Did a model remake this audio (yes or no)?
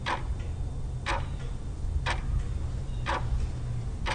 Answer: no